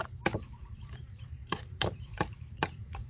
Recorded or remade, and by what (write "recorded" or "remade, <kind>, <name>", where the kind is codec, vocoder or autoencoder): remade, vocoder, BigVGAN v2